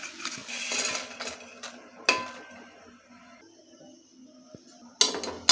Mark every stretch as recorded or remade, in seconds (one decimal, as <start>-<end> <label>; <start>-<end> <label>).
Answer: 0.0-5.5 recorded